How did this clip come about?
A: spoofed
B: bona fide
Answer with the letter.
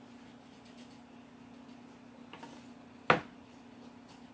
B